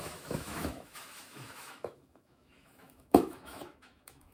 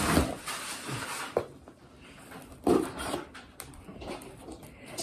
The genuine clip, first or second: second